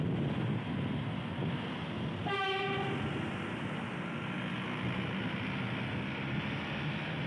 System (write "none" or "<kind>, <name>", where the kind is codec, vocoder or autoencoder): none